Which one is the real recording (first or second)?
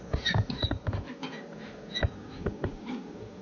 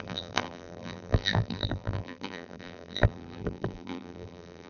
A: first